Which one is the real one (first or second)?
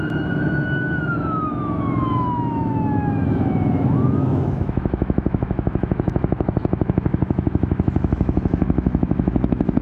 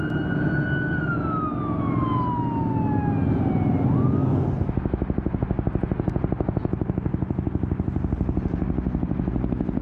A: second